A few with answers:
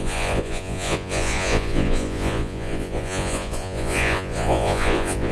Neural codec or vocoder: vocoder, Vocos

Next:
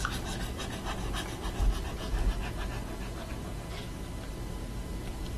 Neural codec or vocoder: none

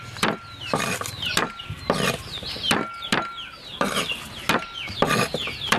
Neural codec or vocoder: none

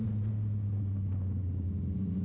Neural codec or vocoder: none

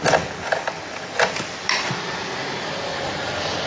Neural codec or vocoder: none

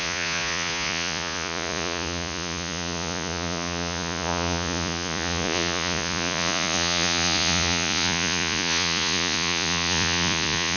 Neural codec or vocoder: vocoder, Vocos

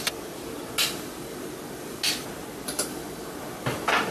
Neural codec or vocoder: none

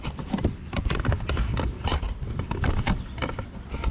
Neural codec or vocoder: none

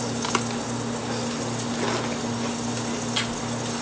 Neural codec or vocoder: none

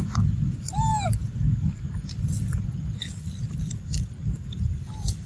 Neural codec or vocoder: none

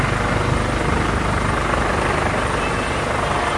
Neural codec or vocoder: none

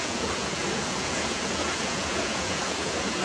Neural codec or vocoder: vocoder, Vocos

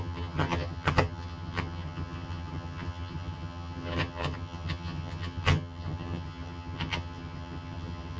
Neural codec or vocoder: vocoder, HiFi-GAN